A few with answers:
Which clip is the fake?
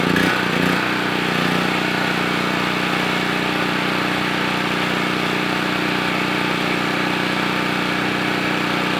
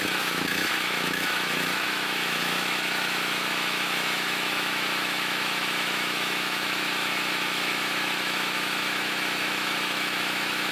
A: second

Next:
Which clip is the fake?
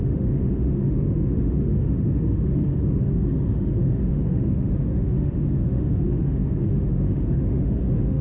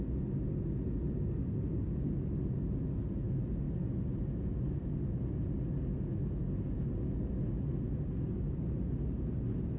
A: first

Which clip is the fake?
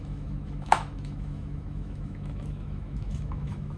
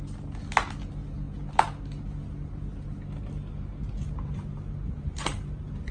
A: first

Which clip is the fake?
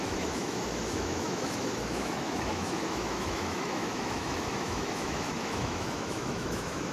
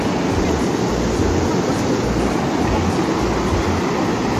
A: first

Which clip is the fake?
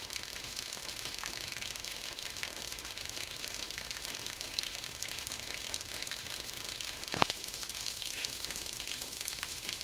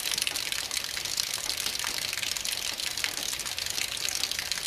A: first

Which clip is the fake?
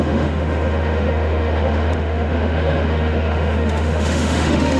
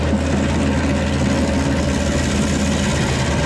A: first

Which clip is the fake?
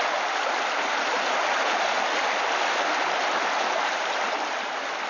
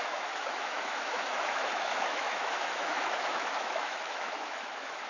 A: second